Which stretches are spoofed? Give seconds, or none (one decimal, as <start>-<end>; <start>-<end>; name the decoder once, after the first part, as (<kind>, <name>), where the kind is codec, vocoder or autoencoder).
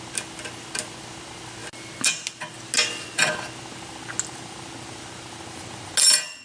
none